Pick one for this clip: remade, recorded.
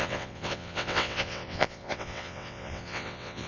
remade